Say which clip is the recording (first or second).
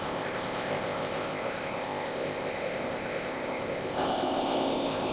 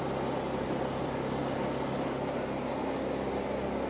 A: second